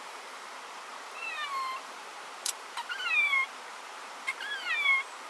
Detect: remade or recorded remade